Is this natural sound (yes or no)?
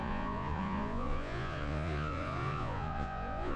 no